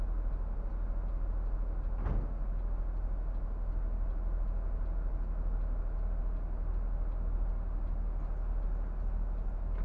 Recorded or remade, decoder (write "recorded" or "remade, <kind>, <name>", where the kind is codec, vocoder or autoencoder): recorded